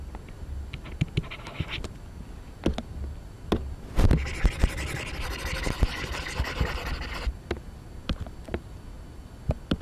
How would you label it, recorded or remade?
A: recorded